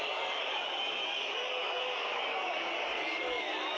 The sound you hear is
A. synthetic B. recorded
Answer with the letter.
A